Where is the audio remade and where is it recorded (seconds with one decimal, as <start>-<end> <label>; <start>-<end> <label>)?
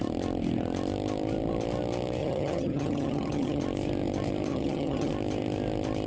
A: 0.0-2.2 recorded; 2.2-3.6 remade; 3.6-4.5 recorded; 4.5-5.1 remade; 5.1-6.1 recorded